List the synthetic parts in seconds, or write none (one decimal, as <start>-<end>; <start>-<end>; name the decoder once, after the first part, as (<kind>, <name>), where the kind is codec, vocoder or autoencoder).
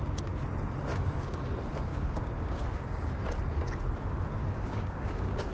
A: 0.9-1.5 (codec, DAC); 1.9-3.1; 4.4-5.5